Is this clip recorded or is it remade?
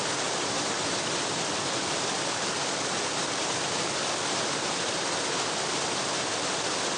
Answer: recorded